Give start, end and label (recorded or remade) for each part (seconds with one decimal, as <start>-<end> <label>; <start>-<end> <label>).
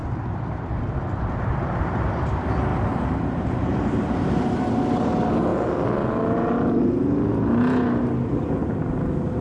0.0-2.7 recorded; 2.7-4.5 remade; 4.5-9.4 recorded